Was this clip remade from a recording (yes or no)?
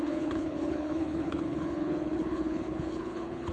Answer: yes